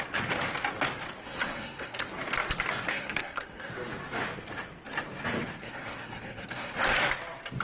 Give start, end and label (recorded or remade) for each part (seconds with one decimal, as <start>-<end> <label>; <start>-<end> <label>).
0.0-1.2 recorded; 1.2-2.1 remade; 2.1-2.9 recorded; 2.9-3.7 remade; 3.7-5.6 recorded; 5.6-6.7 remade; 6.7-7.6 recorded